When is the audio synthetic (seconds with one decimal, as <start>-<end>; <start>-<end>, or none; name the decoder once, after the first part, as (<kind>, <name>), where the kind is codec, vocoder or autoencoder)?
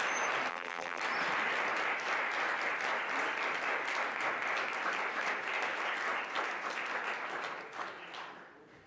0.5-1.0 (vocoder, BigVGAN v2)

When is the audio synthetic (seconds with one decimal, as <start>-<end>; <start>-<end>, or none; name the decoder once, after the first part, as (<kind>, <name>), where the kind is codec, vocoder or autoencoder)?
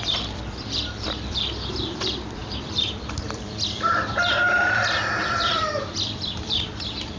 0.0-7.2 (vocoder, BigVGAN v2)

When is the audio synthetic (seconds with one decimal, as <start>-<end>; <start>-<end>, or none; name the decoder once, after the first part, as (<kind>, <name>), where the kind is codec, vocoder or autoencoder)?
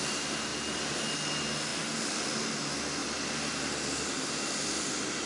0.5-1.1 (vocoder, BigVGAN v2); 1.7-2.2; 3.0-4.8